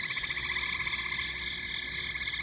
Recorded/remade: recorded